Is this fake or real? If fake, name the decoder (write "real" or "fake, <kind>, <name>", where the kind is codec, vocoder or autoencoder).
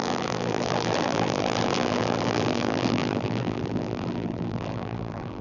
fake, vocoder, BigVGAN v2